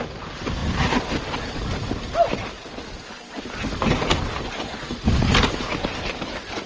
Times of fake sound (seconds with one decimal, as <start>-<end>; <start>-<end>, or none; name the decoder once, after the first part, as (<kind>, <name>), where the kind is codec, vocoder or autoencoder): none